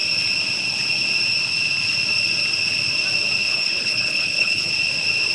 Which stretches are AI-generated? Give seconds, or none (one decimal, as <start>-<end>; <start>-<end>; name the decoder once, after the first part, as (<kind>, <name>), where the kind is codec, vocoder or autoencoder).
3.5-4.7 (codec, HILCodec)